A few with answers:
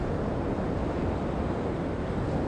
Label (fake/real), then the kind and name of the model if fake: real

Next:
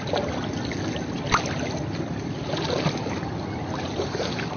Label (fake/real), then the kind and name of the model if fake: real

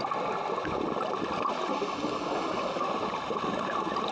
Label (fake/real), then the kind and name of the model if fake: real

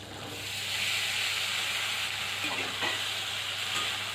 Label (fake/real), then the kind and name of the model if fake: real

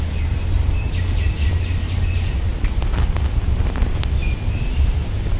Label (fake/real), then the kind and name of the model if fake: real